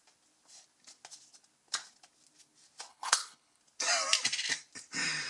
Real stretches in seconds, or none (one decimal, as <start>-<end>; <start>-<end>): 0.0-2.9; 3.6-5.3